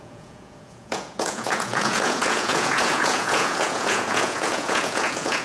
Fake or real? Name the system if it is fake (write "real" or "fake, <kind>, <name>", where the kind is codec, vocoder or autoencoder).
fake, vocoder, Vocos